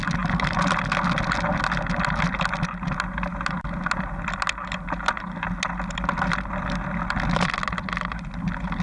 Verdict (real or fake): real